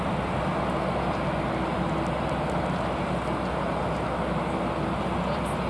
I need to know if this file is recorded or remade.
recorded